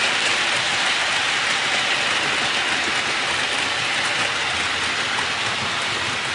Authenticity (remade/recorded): recorded